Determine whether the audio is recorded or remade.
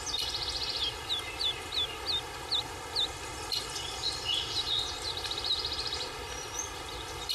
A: remade